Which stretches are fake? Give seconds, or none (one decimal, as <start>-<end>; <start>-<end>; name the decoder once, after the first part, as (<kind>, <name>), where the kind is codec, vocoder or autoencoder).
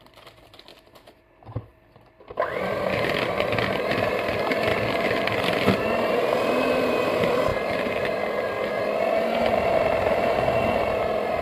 0.0-0.7 (vocoder, BigVGAN v2); 3.8-4.7; 6.1-7.5; 9.0-11.4